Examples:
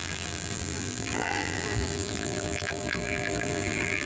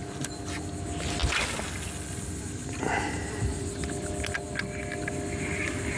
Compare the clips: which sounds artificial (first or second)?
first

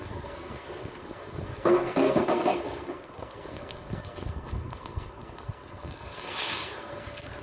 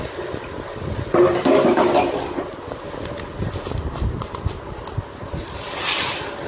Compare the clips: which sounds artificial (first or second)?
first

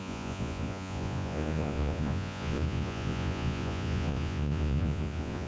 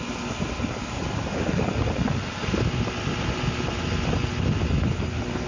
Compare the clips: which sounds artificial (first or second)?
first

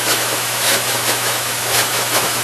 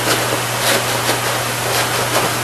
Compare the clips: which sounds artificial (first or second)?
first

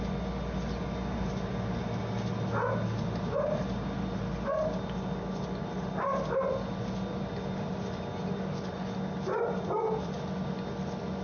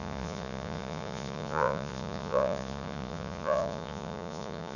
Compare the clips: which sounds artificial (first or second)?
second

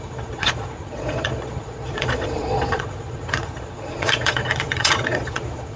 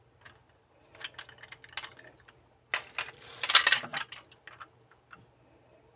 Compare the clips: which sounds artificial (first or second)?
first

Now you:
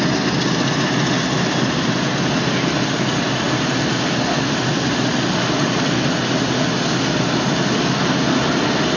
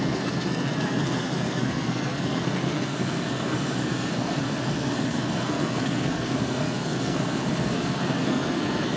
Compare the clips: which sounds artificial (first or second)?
second